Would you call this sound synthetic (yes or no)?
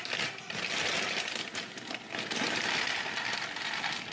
no